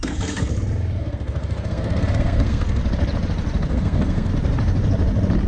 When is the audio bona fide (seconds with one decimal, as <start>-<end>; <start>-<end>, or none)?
0.5-1.0; 2.8-3.7; 4.3-5.5

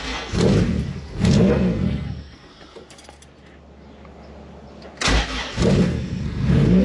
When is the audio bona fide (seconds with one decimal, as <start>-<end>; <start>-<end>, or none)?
0.4-0.9; 2.5-5.8

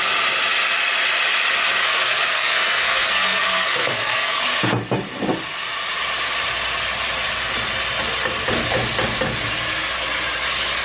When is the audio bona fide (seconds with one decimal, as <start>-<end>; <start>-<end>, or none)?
0.0-1.8; 4.4-10.8